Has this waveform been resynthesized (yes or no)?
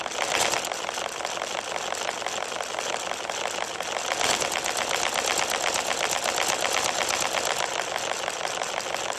no